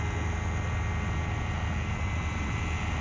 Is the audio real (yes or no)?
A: yes